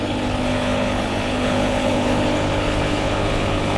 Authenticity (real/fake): fake